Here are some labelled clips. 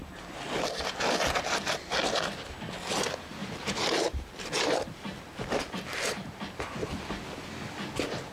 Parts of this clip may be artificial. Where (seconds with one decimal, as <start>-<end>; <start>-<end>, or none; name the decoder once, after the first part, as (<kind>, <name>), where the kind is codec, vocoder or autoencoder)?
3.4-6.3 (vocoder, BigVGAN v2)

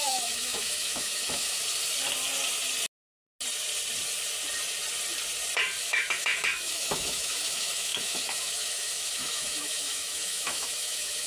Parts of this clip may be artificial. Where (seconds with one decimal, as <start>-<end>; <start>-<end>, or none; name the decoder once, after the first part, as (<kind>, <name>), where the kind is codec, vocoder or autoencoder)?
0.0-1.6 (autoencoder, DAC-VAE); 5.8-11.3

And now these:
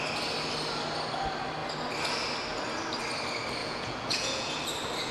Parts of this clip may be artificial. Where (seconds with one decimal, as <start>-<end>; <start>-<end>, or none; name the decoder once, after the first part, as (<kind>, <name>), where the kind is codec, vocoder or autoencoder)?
3.6-4.6 (vocoder, Vocos)

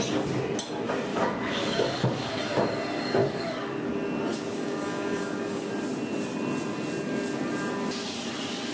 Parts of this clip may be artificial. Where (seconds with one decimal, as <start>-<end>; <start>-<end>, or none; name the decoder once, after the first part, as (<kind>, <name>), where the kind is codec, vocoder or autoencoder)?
1.1-2.4 (codec, DAC); 3.2-3.9; 4.3-5.7

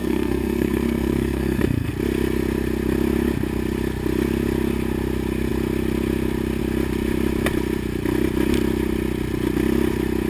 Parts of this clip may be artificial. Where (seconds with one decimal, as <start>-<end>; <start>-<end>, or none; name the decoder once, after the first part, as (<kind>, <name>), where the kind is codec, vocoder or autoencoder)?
0.0-1.9 (codec, SNAC)

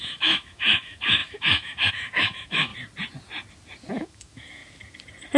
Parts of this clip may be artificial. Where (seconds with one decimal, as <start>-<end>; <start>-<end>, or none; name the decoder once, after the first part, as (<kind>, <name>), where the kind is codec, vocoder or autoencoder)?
0.0-2.7 (autoencoder, DAC-VAE); 3.9-4.6